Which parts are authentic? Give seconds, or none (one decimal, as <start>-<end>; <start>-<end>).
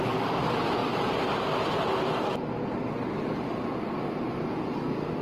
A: 0.0-5.2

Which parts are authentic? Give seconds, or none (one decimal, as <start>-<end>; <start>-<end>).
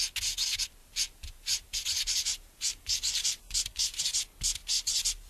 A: 0.0-0.8; 4.0-5.3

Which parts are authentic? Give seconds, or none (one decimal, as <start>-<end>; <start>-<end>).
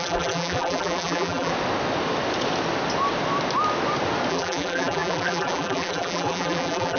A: 1.5-4.3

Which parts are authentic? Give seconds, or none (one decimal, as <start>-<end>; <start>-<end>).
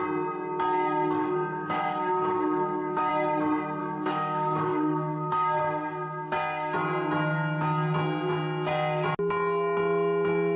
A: 0.0-1.2; 3.1-3.8; 5.6-10.6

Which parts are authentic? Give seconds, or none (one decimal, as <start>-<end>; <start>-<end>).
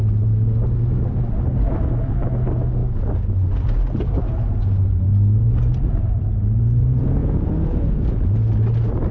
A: 0.0-7.2; 7.9-9.1